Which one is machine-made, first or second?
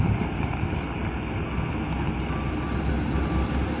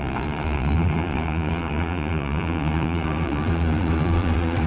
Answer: second